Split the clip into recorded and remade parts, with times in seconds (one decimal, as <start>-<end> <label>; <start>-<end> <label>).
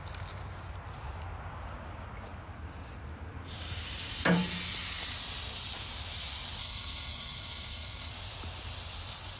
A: 0.0-6.6 recorded; 6.6-8.1 remade; 8.1-9.4 recorded